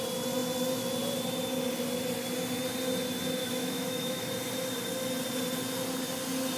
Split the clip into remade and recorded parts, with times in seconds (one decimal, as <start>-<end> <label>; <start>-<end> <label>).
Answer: 0.0-3.4 recorded; 3.4-4.2 remade; 4.2-6.6 recorded